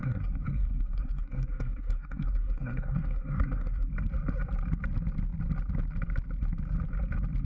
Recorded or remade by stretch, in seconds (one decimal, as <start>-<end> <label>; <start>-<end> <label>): 0.0-3.9 remade; 3.9-7.4 recorded